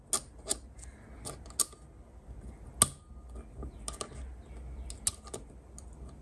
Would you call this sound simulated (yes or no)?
no